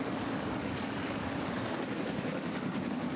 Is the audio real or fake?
fake